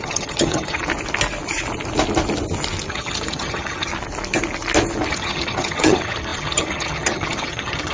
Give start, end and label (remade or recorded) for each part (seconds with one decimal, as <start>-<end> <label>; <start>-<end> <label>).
0.0-0.8 remade; 0.8-2.9 recorded; 2.9-3.9 remade; 3.9-5.1 recorded; 5.1-7.9 remade